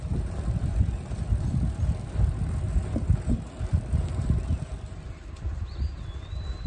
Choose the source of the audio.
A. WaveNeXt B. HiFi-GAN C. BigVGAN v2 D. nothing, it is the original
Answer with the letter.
D